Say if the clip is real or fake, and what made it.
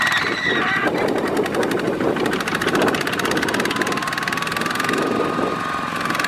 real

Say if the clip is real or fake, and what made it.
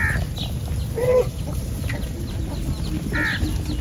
real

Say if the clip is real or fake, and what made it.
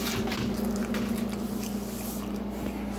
real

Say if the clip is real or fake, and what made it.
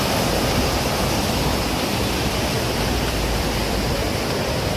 fake, vocoder, BigVGAN v2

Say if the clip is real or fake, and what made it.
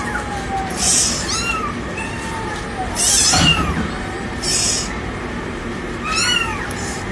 fake, vocoder, BigVGAN v2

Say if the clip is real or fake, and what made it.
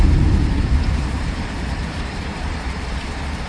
fake, vocoder, BigVGAN v2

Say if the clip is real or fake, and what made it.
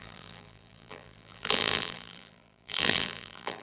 fake, vocoder, BigVGAN v2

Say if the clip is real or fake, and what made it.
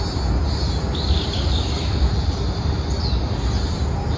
real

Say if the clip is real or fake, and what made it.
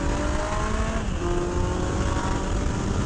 real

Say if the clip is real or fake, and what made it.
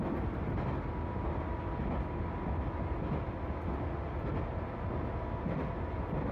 real